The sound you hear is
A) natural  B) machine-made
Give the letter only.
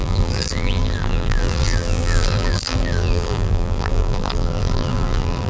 B